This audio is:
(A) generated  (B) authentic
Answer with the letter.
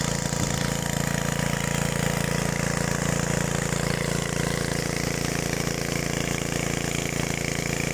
B